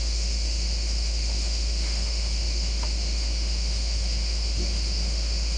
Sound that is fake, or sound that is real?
fake